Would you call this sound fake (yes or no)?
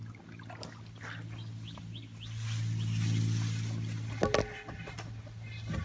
no